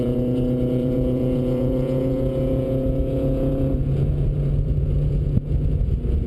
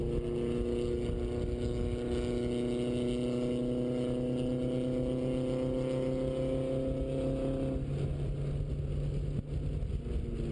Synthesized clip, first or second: first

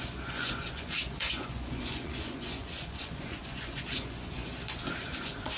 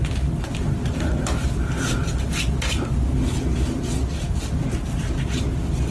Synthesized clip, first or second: first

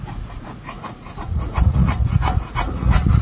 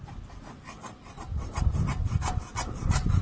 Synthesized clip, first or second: first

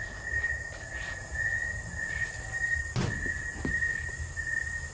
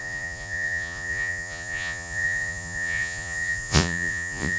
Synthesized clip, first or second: second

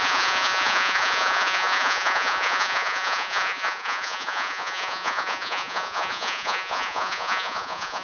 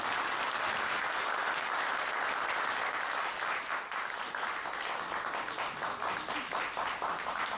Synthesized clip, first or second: first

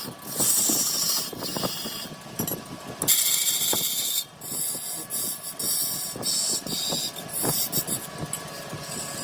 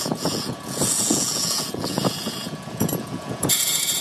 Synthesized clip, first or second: second